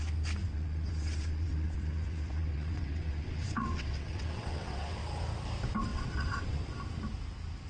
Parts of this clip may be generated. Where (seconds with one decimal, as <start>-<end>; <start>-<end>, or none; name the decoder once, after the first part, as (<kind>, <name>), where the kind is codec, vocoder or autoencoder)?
0.4-5.0 (vocoder, WaveNeXt); 5.9-6.6